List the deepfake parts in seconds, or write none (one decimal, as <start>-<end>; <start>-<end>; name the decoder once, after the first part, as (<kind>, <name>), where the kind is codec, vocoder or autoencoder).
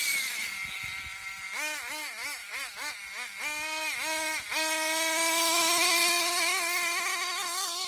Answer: 2.4-2.9 (vocoder, BigVGAN v2)